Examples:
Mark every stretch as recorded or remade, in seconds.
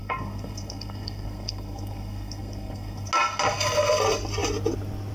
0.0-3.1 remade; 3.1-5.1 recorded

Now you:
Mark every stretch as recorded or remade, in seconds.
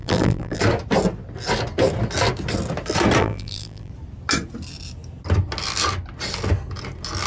0.0-0.6 remade; 0.6-3.2 recorded; 3.2-3.9 remade; 3.9-7.3 recorded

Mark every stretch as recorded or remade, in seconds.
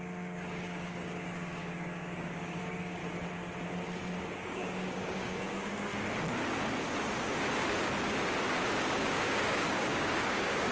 0.0-3.0 remade; 3.0-4.2 recorded; 4.2-5.9 remade; 5.9-8.8 recorded; 8.8-10.7 remade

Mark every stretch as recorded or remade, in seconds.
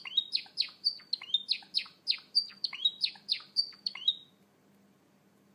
0.0-2.5 recorded; 2.5-4.1 remade; 4.1-5.5 recorded